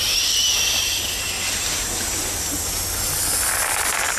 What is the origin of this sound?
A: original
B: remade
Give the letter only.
A